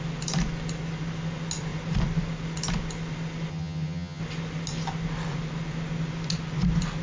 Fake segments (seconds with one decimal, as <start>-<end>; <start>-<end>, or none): 3.5-4.2

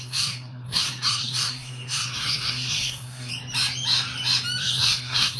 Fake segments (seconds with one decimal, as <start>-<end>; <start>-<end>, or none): 0.0-3.3; 4.6-5.4

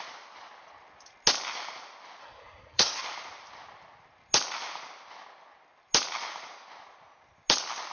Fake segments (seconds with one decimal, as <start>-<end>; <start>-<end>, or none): 2.2-3.0

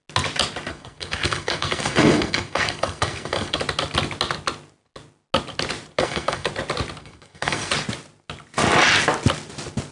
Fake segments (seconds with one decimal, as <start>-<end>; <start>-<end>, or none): 0.7-3.6; 6.0-6.5; 7.0-7.7

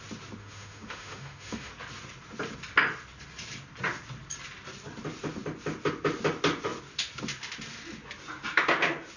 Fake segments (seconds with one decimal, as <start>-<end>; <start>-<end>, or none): 0.4-1.7

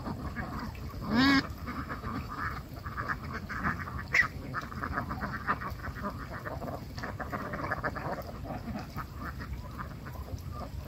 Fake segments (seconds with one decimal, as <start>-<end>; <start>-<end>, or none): 1.7-2.4

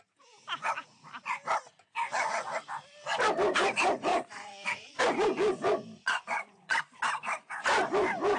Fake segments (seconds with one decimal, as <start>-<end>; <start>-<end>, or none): 4.1-5.0; 6.0-6.8